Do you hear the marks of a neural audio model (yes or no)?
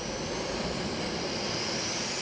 no